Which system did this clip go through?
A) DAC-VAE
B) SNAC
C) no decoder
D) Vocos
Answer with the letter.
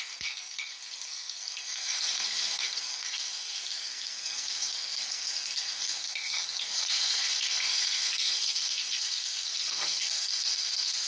B